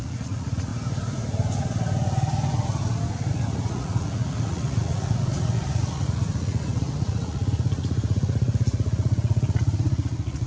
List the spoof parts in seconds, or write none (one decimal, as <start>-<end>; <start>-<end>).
0.0-0.7; 3.3-10.5